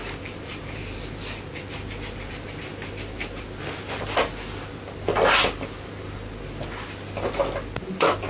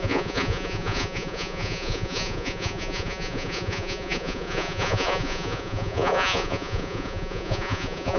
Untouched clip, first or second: first